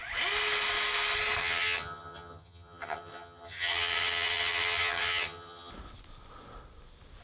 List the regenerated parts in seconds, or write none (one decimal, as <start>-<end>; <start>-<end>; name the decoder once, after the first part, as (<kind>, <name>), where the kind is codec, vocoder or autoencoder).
1.4-5.7 (vocoder, HiFi-GAN)